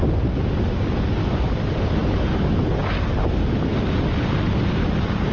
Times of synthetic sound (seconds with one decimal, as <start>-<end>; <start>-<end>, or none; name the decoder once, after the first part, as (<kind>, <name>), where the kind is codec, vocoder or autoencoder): 2.0-2.8 (vocoder, BigVGAN v2)